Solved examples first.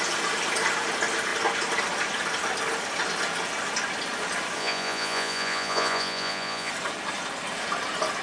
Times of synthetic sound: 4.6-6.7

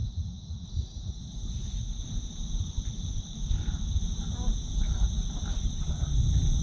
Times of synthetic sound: 0.0-2.0

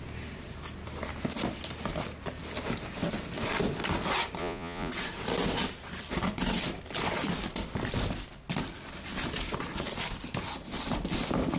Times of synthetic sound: 4.4-4.9

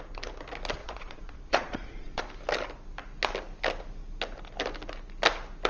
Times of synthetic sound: 0.8-2.2